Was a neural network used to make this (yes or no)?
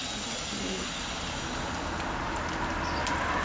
no